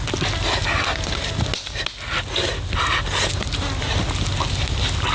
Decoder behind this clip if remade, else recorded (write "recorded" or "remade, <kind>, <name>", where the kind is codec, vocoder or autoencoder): recorded